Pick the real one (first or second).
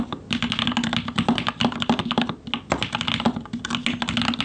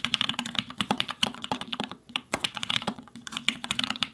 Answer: first